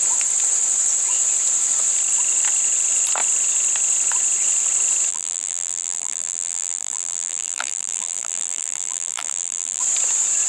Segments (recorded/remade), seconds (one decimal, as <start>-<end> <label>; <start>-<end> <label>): 0.0-5.1 recorded; 5.1-9.8 remade; 9.8-10.5 recorded